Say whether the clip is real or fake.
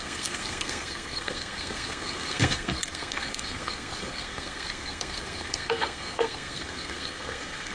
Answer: fake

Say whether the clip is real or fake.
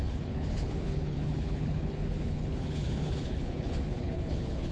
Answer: fake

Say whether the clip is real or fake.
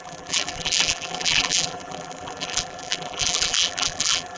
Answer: fake